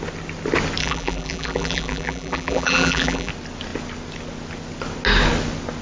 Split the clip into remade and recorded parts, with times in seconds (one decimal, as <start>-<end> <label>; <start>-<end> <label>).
0.0-0.8 recorded; 0.8-3.3 remade; 3.3-5.8 recorded